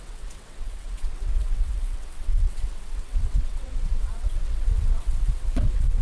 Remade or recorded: remade